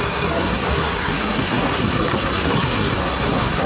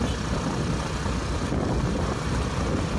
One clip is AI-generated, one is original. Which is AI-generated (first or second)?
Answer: first